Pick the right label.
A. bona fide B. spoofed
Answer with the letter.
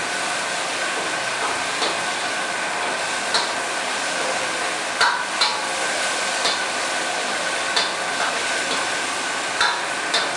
A